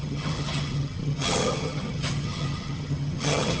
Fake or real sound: fake